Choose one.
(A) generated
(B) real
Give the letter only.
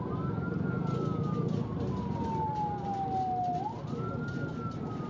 B